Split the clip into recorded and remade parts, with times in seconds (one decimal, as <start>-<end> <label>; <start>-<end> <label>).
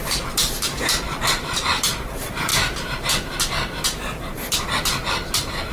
0.0-2.5 remade; 2.5-4.8 recorded; 4.8-5.7 remade